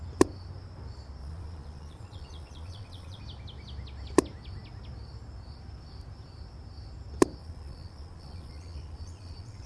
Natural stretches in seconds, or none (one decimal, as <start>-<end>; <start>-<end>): 0.0-1.2; 3.2-7.4